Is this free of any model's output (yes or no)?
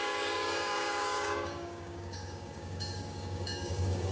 no